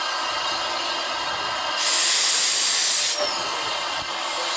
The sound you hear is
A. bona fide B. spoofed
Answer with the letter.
A